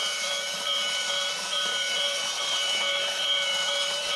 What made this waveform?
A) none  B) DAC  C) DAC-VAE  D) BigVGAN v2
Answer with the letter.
D